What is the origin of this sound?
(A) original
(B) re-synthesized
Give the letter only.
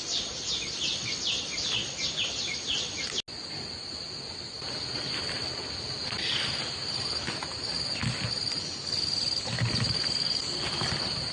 A